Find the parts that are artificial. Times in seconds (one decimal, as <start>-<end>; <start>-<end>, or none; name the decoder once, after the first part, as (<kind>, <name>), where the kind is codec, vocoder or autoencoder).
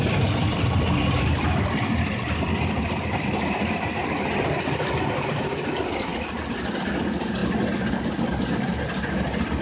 none